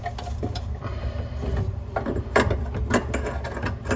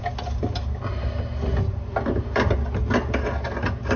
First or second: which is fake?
first